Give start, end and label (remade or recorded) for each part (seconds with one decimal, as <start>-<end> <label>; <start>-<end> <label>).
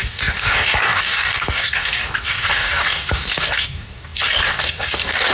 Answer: 0.0-5.3 remade